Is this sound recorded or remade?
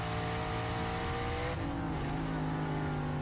recorded